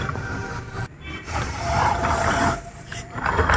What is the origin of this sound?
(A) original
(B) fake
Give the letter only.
B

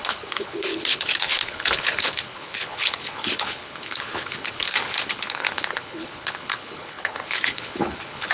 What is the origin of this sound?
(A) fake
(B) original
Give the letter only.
A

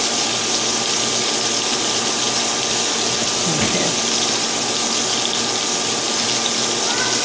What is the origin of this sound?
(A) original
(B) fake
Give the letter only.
A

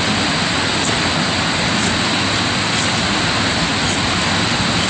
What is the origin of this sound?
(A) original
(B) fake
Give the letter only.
A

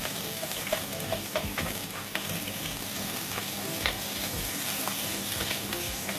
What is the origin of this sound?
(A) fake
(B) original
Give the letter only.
A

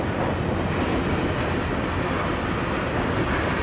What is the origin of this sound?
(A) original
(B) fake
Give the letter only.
A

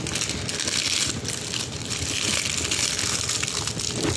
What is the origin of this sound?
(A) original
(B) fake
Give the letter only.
A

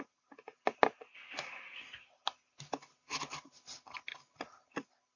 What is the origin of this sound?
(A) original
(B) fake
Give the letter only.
A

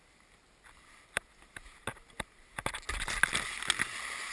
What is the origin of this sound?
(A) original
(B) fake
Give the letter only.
A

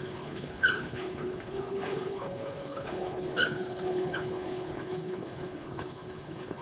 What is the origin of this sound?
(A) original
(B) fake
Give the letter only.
B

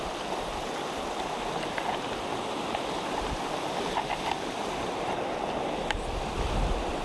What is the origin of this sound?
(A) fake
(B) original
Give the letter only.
B